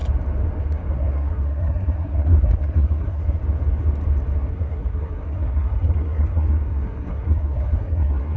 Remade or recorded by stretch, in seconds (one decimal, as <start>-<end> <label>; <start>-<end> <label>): 0.0-0.6 recorded; 0.6-3.4 remade; 3.4-4.5 recorded; 4.5-8.4 remade